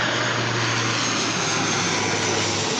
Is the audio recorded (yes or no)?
yes